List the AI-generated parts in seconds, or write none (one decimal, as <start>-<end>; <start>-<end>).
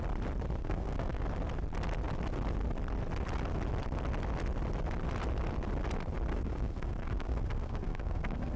0.6-1.2; 6.3-8.6